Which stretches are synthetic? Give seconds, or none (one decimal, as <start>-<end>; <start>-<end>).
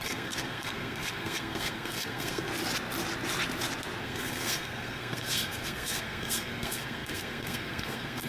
0.0-2.5; 4.0-8.3